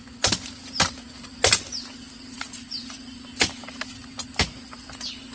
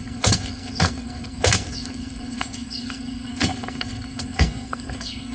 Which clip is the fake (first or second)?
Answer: second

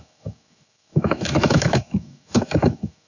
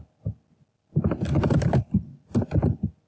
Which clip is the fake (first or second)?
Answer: first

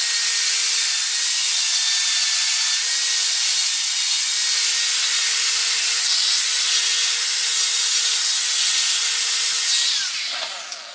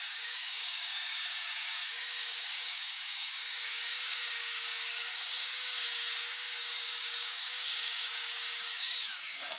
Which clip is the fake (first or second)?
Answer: second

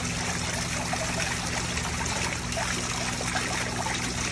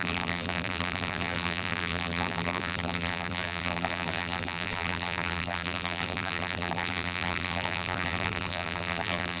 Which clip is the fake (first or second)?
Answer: second